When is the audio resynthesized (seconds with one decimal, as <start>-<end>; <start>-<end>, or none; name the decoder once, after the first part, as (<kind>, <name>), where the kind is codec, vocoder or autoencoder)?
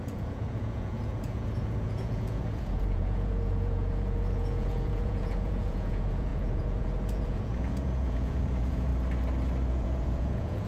0.0-8.9 (vocoder, Vocos); 9.7-10.7